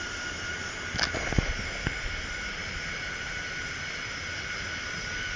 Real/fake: real